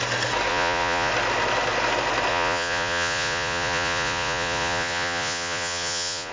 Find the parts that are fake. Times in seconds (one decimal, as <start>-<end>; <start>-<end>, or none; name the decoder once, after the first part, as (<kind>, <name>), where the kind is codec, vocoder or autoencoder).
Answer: 0.5-1.1 (vocoder, Vocos); 2.3-6.3